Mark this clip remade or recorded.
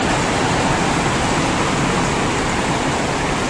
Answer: recorded